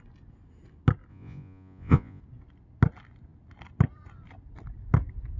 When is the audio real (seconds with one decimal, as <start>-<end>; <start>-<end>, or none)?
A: 0.0-1.1; 2.2-5.4